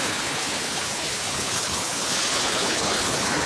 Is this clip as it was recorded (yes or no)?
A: no